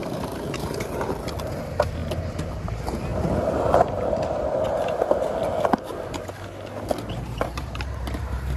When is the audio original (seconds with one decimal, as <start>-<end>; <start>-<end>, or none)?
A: 2.0-2.6; 3.1-7.1